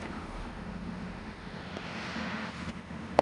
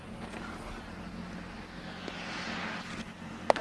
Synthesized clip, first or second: first